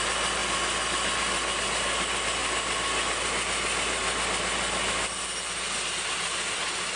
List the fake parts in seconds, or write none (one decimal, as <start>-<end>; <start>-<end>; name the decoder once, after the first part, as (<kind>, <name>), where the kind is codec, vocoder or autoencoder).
none

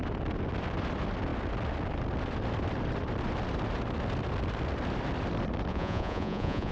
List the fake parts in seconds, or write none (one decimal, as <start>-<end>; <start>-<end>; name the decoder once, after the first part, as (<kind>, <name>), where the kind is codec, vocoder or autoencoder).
5.7-6.7 (vocoder, Vocos)

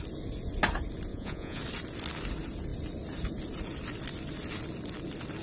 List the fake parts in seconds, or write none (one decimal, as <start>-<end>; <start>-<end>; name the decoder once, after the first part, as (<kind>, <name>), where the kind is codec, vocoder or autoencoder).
1.1-1.6 (vocoder, Vocos)

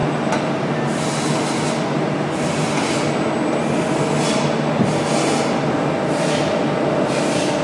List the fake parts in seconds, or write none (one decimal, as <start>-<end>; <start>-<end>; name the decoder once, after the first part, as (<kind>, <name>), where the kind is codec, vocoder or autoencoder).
none

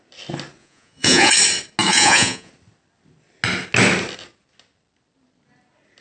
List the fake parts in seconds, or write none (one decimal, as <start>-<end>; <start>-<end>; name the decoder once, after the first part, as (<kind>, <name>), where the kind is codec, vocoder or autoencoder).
0.6-1.3 (vocoder, Vocos); 1.9-2.5

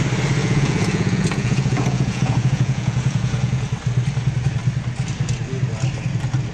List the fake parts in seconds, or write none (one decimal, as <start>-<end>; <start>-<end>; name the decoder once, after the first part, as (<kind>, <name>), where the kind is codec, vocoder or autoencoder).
0.4-3.7 (vocoder, Vocos)

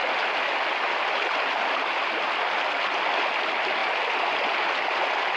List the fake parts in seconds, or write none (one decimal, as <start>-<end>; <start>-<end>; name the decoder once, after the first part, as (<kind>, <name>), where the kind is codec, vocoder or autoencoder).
none

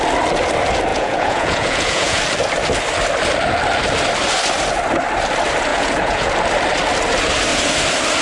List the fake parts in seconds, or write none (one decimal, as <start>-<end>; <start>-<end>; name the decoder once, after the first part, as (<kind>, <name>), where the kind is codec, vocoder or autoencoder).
0.9-2.2 (vocoder, Vocos); 5.7-6.3